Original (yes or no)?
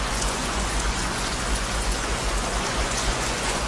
no